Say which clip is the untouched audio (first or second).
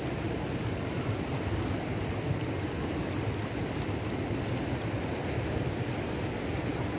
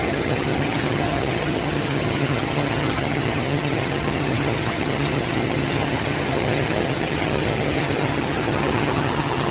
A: first